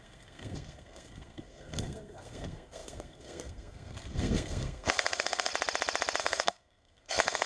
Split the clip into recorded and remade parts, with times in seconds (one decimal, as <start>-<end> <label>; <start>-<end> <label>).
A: 0.0-5.5 remade; 5.5-6.2 recorded; 6.2-7.5 remade